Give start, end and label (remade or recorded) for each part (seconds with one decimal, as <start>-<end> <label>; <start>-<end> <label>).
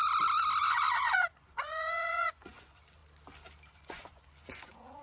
0.0-0.6 recorded; 0.6-3.0 remade; 3.0-3.7 recorded; 3.7-5.0 remade